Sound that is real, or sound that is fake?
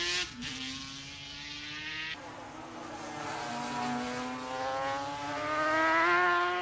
real